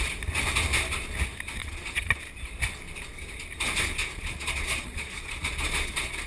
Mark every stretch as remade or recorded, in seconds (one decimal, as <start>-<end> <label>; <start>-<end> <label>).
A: 0.0-1.6 recorded; 1.6-2.2 remade; 2.2-4.0 recorded; 4.0-6.3 remade